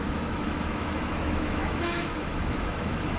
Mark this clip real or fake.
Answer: fake